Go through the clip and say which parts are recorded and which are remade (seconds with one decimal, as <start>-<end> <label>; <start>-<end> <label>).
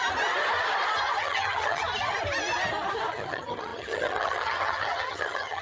0.0-1.2 recorded; 1.2-1.8 remade; 1.8-3.1 recorded; 3.1-5.6 remade